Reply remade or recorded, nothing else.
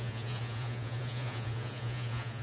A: remade